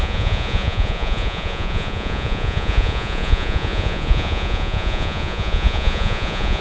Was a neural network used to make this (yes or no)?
yes